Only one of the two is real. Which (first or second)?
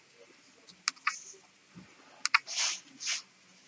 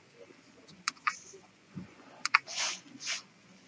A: first